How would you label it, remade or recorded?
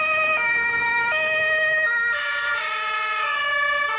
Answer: remade